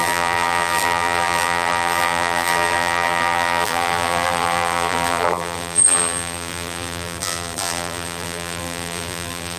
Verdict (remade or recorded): remade